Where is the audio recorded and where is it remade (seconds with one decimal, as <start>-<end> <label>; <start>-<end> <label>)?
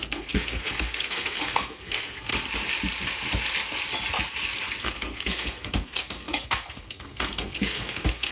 0.0-2.3 remade; 2.3-4.8 recorded; 4.8-8.3 remade